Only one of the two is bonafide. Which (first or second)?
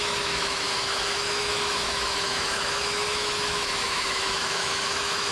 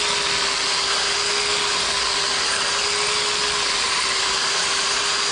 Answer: second